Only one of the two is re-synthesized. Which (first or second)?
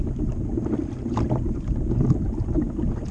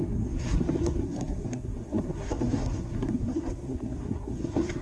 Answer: second